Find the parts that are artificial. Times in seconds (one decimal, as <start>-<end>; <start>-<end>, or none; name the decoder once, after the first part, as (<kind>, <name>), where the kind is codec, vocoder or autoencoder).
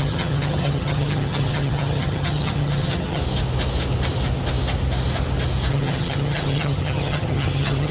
0.0-3.2 (vocoder, HiFi-GAN); 5.7-7.9